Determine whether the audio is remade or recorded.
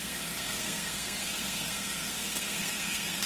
remade